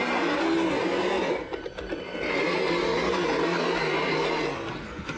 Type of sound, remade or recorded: recorded